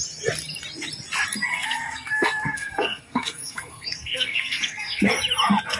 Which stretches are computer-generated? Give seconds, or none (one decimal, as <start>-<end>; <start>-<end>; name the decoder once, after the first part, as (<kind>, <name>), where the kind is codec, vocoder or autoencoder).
1.5-5.0 (codec, SNAC)